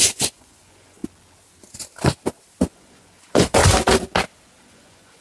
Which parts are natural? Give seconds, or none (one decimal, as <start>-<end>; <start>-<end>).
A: 1.0-2.7; 3.6-4.6